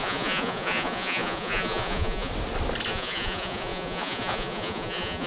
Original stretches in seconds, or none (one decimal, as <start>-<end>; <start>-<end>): 2.3-2.9